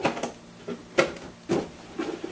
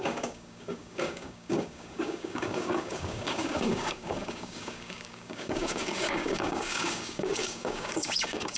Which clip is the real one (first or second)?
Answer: first